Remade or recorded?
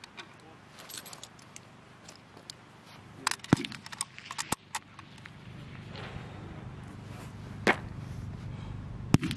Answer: recorded